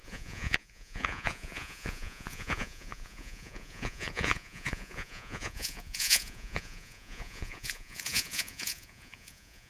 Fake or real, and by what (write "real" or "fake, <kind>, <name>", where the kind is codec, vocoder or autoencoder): fake, vocoder, Vocos